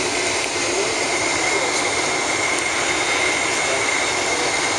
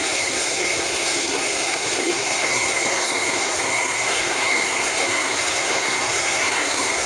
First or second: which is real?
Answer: first